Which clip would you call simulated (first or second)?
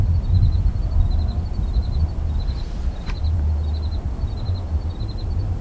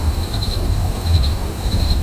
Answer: second